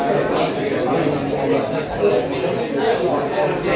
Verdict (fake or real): real